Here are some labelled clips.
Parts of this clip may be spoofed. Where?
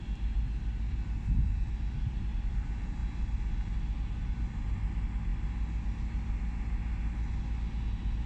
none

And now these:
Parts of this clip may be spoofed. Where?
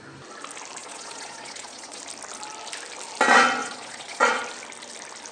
0.8-2.0; 3.6-4.4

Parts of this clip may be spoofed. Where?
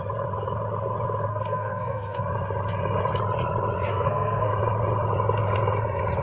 1.3-2.2; 3.9-4.5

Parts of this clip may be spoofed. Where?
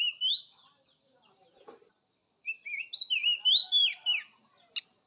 2.2-2.9; 3.6-4.2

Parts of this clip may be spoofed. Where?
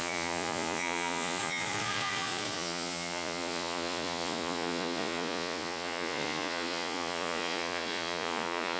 0.0-8.8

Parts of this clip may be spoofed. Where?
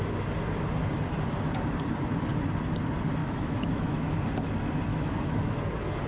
3.2-4.2; 4.9-5.6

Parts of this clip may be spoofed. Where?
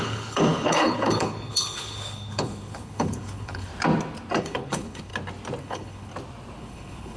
0.0-3.7; 4.4-5.1; 5.6-6.1; 6.6-7.2